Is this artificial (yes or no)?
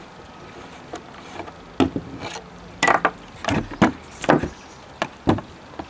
no